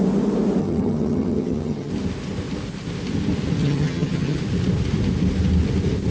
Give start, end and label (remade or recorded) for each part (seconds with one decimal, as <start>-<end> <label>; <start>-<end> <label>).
0.0-0.6 recorded; 0.6-1.9 remade; 1.9-3.6 recorded; 3.6-4.4 remade; 4.4-6.1 recorded